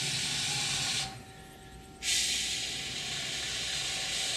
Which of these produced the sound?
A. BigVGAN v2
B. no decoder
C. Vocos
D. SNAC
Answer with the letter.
B